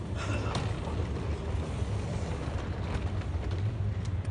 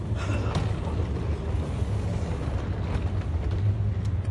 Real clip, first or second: second